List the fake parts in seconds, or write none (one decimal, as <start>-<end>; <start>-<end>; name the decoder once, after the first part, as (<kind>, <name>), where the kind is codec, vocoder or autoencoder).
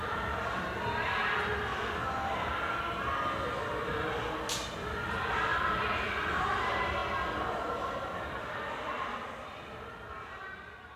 0.0-1.7 (vocoder, BigVGAN v2); 4.5-7.0; 7.7-11.0